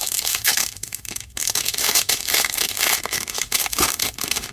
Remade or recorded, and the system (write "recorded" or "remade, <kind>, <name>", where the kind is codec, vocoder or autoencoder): remade, autoencoder, DAC-VAE